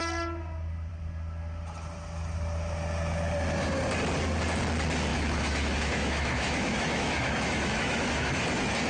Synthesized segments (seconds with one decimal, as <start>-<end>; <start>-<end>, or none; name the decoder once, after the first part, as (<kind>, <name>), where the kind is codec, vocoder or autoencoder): 5.1-8.4 (autoencoder, DAC-VAE)

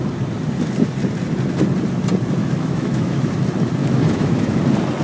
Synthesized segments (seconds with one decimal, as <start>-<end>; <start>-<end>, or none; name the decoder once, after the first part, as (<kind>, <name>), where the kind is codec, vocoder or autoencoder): 2.4-3.3 (autoencoder, DAC-VAE); 3.8-4.6

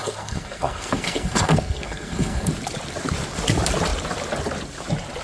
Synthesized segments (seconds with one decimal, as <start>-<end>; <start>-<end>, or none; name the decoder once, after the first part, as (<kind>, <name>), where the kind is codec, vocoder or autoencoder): 0.0-2.5 (codec, SNAC)

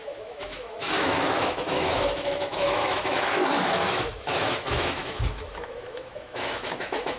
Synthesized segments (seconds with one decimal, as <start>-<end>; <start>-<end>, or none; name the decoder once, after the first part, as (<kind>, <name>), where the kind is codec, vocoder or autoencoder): 0.0-7.2 (autoencoder, DAC-VAE)